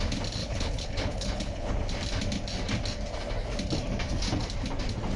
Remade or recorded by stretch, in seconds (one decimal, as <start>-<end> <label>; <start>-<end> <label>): 0.0-0.4 recorded; 0.4-1.7 remade; 1.7-5.2 recorded